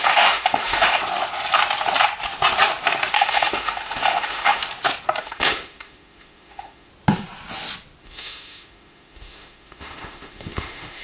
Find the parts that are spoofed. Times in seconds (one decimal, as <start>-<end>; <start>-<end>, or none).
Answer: 0.0-1.0; 3.1-4.6; 5.2-6.9; 8.0-11.0